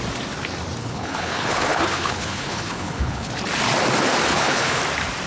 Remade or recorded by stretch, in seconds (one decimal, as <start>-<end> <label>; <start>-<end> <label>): 0.0-0.8 recorded; 0.8-3.3 remade; 3.3-4.3 recorded; 4.3-4.8 remade; 4.8-5.3 recorded